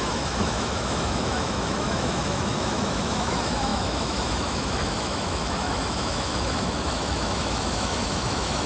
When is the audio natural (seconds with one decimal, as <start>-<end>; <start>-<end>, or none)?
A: none